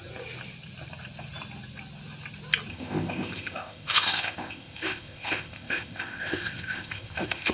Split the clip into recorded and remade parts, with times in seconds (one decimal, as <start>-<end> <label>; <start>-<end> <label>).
0.0-2.7 recorded; 2.7-7.5 remade